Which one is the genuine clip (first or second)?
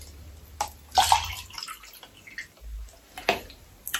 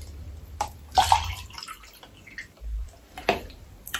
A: first